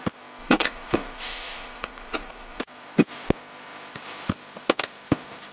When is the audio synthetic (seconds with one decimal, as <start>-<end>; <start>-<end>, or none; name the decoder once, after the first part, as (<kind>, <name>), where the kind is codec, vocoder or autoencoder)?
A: 0.4-2.6 (vocoder, Vocos)